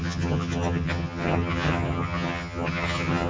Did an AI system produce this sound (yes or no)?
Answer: yes